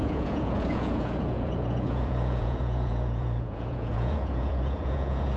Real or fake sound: fake